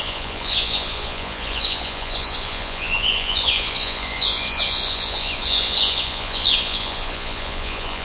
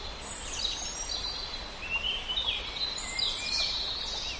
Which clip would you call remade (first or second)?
first